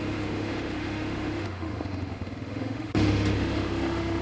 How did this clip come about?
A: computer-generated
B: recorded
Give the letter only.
A